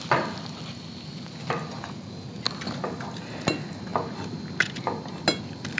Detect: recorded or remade recorded